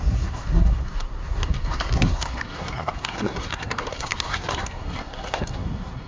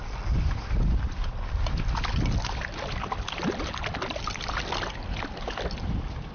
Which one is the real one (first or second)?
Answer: second